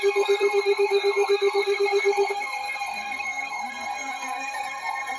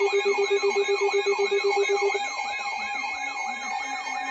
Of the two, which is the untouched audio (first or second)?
second